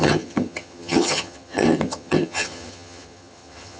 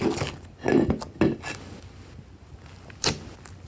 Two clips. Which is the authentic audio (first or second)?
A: second